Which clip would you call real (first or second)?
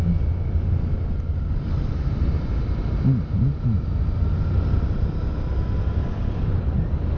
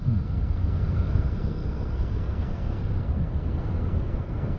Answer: first